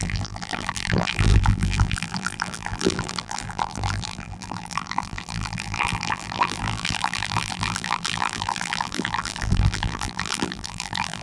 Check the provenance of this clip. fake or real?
fake